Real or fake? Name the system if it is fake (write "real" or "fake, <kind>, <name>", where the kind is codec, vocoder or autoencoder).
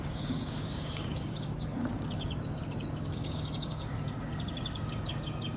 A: fake, codec, DAC